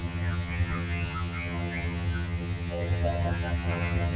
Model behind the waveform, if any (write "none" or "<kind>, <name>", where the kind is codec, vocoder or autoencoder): vocoder, HiFi-GAN